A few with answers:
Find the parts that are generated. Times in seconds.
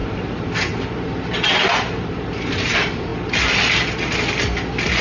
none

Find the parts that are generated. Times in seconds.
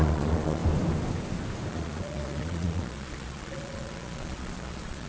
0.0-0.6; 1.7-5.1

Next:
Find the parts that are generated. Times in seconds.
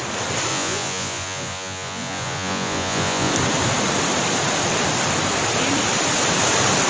0.5-3.3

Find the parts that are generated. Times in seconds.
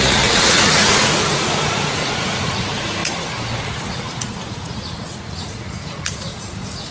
0.0-3.0; 3.6-6.9